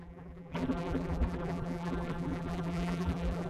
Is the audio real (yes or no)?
no